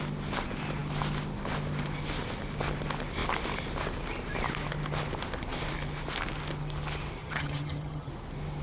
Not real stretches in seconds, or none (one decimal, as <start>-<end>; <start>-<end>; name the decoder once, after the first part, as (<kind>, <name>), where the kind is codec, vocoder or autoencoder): 7.2-8.1 (vocoder, HiFi-GAN)